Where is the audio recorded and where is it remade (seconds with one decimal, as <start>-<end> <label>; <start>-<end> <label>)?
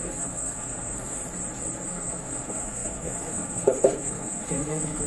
0.0-1.2 remade; 1.2-1.9 recorded; 1.9-5.1 remade